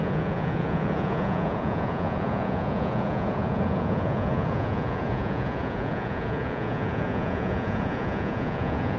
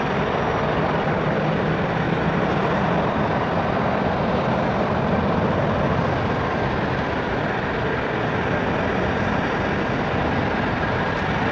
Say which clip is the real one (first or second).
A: second